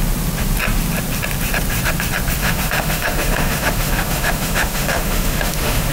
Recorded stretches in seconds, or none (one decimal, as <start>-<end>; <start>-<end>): 0.0-2.4